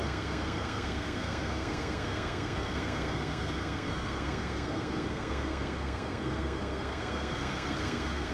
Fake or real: fake